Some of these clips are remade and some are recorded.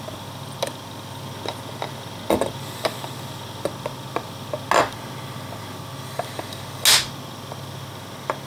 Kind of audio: recorded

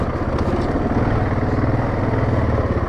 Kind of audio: recorded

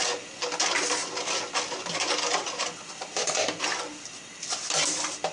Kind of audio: remade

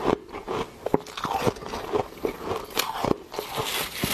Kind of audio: recorded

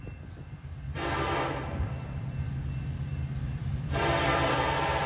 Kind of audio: remade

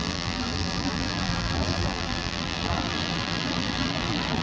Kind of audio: remade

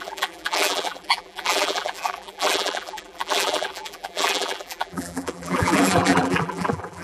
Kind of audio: remade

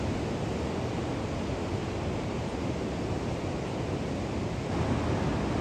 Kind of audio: recorded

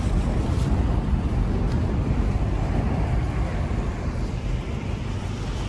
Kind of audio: remade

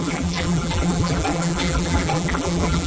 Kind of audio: remade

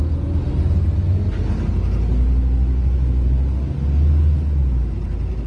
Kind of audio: recorded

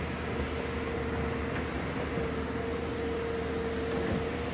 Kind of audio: recorded